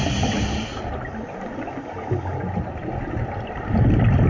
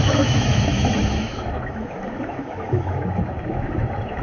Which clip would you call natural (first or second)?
first